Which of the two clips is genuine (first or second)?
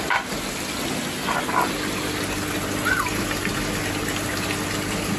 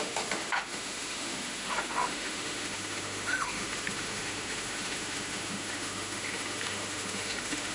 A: first